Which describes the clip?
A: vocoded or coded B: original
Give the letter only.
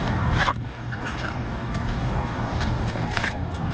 A